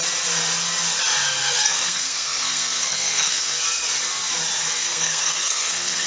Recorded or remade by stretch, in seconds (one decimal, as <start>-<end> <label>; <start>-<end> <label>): 0.0-1.4 recorded; 1.4-3.6 remade; 3.6-4.8 recorded; 4.8-6.1 remade